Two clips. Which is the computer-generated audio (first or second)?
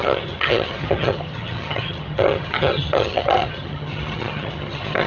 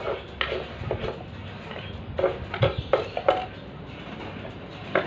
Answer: first